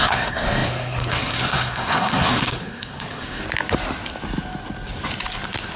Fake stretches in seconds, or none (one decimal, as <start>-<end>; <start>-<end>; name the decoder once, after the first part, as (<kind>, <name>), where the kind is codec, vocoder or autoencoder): 0.0-3.4 (codec, SNAC)

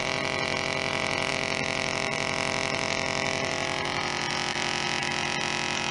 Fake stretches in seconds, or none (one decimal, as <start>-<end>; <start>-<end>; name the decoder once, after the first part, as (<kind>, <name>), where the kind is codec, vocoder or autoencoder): none

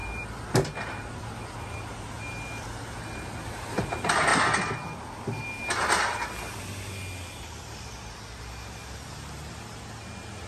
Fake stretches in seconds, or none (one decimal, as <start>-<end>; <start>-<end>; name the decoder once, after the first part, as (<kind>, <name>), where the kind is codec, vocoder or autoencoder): none